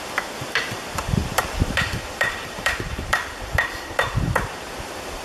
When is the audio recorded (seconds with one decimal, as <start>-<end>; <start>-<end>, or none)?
none